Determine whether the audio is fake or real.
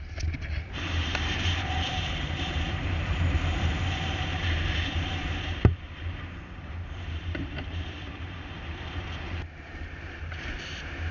fake